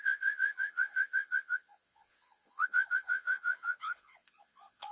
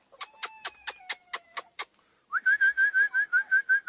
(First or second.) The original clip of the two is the second